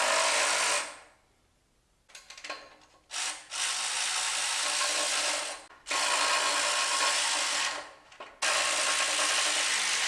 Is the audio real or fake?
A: real